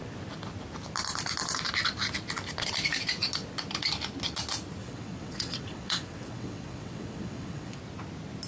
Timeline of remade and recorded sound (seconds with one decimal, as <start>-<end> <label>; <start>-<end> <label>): 0.0-4.8 recorded; 4.8-7.8 remade; 7.8-8.5 recorded